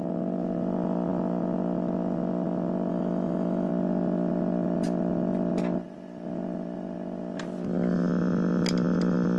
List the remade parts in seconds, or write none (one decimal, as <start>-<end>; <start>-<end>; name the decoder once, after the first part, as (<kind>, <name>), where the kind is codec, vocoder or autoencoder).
2.9-3.7 (autoencoder, DAC-VAE)